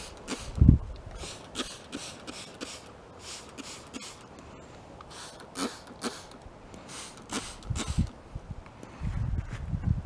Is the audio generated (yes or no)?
no